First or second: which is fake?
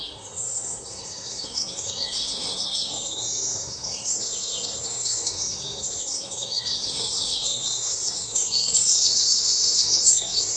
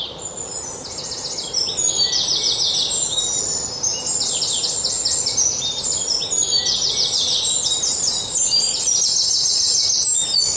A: first